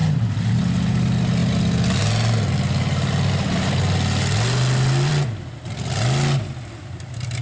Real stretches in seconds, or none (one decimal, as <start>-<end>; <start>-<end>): 0.0-7.4